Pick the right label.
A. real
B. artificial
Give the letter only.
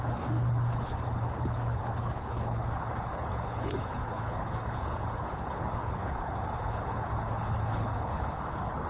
B